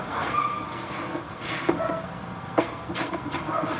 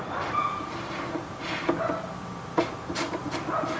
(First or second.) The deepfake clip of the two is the first